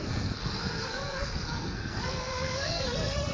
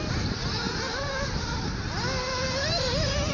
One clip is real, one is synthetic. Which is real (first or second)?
second